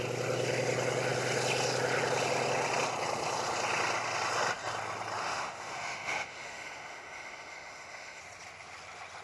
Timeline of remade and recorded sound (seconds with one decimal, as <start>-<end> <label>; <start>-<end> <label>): 0.0-5.2 recorded; 5.2-8.2 remade; 8.2-9.2 recorded